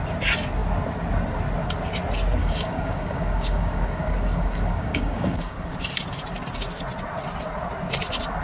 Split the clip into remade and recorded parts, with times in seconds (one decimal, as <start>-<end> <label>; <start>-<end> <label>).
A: 0.0-2.4 recorded; 2.4-5.8 remade; 5.8-8.4 recorded